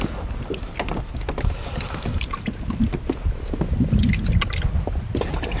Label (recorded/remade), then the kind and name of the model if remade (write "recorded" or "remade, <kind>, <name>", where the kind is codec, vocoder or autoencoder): recorded